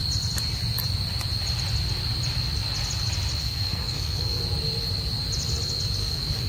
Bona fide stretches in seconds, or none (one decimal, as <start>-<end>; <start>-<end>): 0.0-3.4; 4.4-6.0

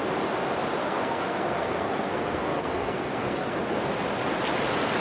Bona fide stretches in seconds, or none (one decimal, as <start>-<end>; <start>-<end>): 0.0-0.8; 3.8-5.0

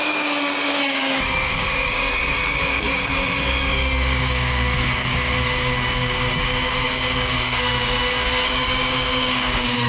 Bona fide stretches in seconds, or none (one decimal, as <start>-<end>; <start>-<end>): none

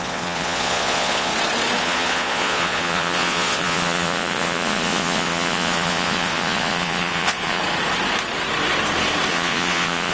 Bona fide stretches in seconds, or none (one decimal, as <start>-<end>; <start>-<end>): 1.3-1.8; 7.6-9.3

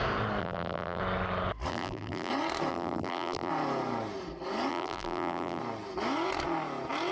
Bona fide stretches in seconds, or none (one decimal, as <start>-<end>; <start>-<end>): 0.0-0.4; 1.0-1.7; 2.3-2.7; 3.5-4.7; 5.6-7.1

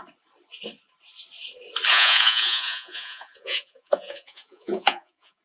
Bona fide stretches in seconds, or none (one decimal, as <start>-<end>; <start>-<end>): 0.0-1.9

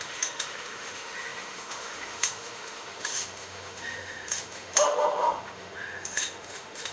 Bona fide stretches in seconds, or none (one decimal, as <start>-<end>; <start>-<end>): none

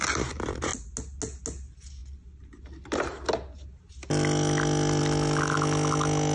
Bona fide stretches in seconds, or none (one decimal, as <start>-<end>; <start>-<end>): 0.0-6.3